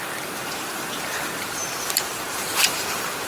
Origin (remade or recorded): remade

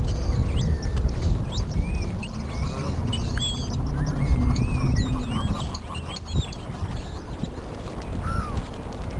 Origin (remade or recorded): recorded